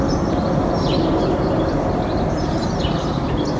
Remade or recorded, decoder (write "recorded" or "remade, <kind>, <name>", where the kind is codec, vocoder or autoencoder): recorded